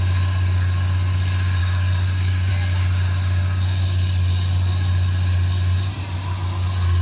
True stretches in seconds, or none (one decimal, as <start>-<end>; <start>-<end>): 0.0-1.6; 2.5-7.0